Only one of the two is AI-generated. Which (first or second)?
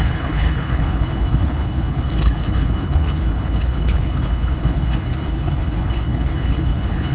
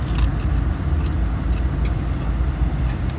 first